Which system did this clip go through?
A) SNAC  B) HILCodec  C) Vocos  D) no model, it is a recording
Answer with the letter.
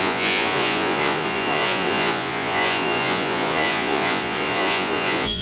C